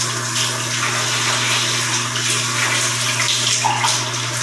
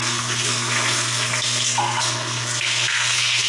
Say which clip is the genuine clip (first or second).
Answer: first